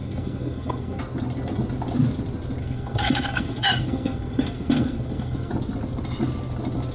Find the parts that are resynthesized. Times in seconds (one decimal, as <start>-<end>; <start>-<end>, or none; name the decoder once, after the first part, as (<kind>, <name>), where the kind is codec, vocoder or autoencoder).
0.0-1.0 (codec, SNAC); 2.6-5.5